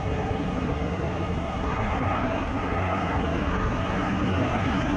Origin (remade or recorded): remade